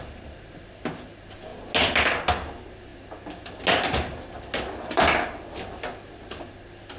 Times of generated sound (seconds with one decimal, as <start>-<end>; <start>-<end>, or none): none